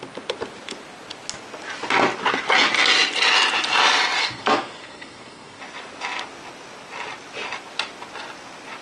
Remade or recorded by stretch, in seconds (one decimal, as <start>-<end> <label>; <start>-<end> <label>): 0.0-4.2 recorded; 4.2-5.6 remade; 5.6-8.8 recorded